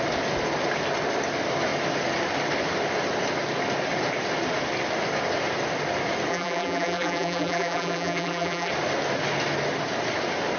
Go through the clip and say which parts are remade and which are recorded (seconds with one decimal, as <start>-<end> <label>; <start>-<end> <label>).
0.0-6.3 recorded; 6.3-8.7 remade; 8.7-10.6 recorded